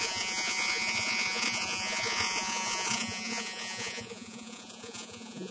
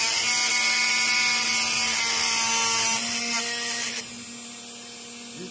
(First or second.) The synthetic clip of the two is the first